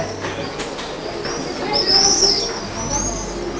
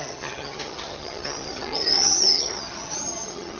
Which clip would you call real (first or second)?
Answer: first